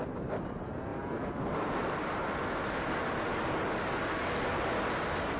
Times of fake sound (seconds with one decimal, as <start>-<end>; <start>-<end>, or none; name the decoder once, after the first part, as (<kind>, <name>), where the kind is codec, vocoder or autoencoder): none